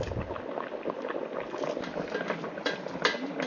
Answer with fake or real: real